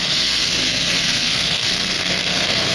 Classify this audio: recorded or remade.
remade